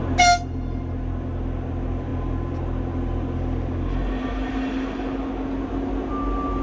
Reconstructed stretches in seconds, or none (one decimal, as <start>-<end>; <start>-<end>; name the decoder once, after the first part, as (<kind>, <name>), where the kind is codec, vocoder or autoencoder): none